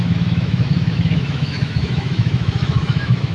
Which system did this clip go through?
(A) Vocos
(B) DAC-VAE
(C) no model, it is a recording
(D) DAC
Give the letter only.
B